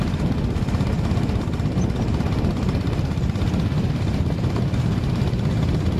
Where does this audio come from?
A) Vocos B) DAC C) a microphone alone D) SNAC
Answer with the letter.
C